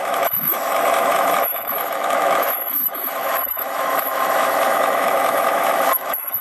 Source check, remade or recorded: remade